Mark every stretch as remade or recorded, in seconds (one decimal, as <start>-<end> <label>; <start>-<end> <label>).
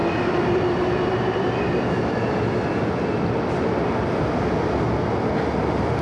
0.0-3.6 remade; 3.6-6.0 recorded